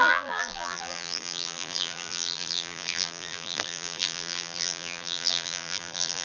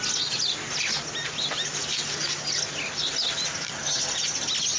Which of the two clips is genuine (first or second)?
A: second